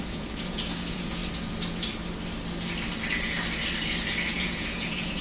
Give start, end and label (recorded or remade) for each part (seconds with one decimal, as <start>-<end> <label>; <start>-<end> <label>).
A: 0.0-1.2 remade; 1.2-4.3 recorded; 4.3-5.2 remade

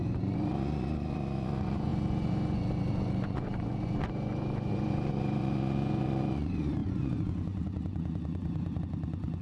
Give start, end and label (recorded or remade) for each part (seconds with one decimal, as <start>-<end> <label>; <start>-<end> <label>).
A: 0.0-9.4 remade

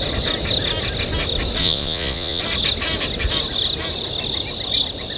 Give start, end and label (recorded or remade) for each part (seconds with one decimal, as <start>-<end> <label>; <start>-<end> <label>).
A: 0.0-1.6 recorded; 1.6-2.4 remade; 2.4-5.2 recorded

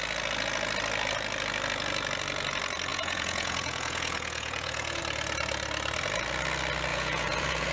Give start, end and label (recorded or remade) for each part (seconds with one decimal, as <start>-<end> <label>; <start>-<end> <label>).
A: 0.0-2.9 recorded; 2.9-5.0 remade; 5.0-6.9 recorded; 6.9-7.7 remade

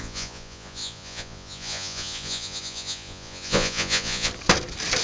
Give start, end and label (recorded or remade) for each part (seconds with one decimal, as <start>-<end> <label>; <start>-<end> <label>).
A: 0.0-4.3 remade; 4.3-5.0 recorded